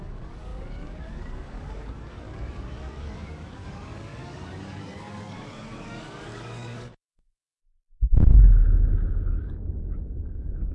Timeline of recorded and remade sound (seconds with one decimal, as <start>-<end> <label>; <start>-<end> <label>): 0.0-7.6 remade; 7.6-10.0 recorded; 10.0-10.7 remade